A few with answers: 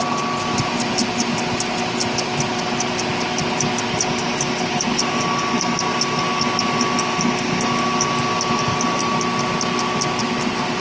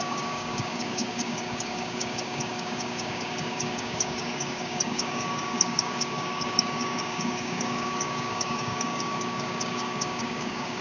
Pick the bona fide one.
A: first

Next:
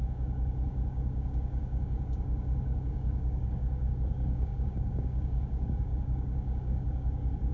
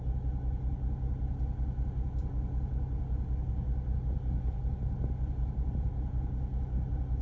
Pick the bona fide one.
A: second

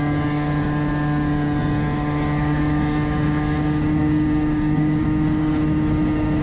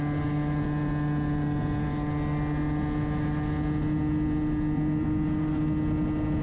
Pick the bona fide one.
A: second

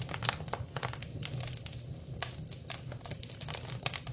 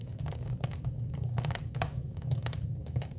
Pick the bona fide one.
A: first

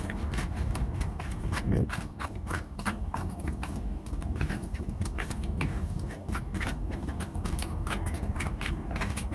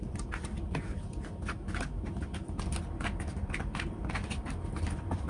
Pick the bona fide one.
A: second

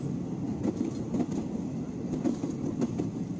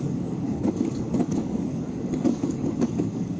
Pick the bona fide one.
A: first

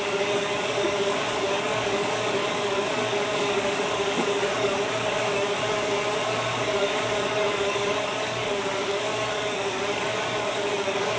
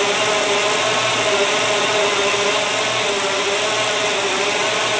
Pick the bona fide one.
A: second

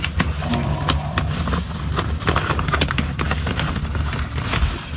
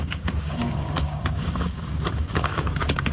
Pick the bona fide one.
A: first